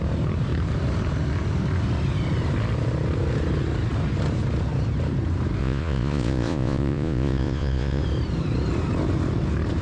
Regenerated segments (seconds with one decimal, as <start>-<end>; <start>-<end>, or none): 5.6-8.0